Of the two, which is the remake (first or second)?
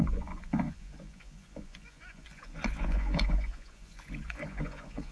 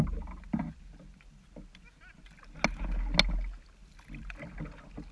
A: first